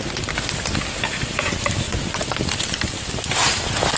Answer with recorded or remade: remade